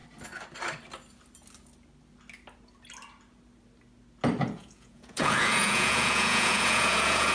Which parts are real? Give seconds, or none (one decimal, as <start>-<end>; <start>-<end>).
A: 0.0-4.4